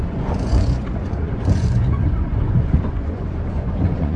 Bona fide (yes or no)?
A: no